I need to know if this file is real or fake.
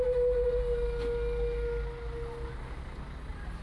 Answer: real